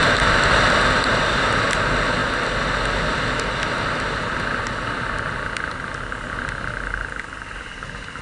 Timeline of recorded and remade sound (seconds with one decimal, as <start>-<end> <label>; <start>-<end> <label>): 0.0-8.2 recorded